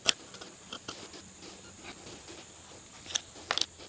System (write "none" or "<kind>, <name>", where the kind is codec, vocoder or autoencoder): none